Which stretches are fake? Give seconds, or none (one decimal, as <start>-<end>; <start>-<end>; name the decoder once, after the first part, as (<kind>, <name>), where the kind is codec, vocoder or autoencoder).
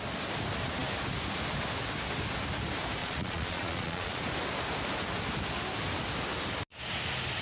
3.0-4.2 (vocoder, Vocos)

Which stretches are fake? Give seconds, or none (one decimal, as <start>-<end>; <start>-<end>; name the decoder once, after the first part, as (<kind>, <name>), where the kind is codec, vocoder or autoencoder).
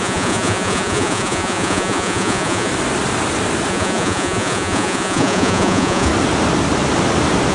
0.0-2.7 (vocoder, Vocos); 3.7-6.1